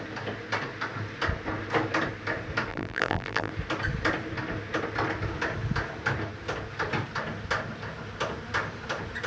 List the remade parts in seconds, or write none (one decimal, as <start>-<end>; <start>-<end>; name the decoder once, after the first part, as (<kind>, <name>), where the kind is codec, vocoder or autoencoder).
2.7-3.5 (vocoder, BigVGAN v2)